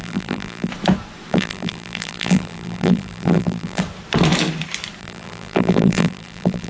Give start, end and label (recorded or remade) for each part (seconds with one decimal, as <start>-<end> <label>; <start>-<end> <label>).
0.0-0.7 remade; 0.7-1.3 recorded; 1.3-3.8 remade; 3.8-5.0 recorded; 5.0-6.7 remade